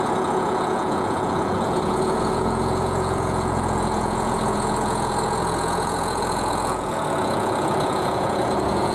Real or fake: fake